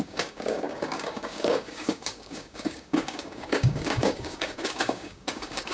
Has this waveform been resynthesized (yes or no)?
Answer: yes